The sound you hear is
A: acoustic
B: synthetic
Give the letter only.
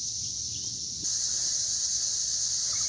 A